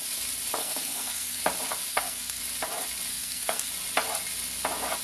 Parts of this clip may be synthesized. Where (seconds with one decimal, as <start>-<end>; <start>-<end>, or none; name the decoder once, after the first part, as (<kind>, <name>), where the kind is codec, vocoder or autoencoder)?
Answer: 0.6-1.4 (codec, SNAC); 1.9-2.4; 3.1-3.7